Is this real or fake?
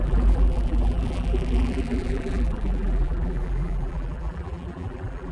fake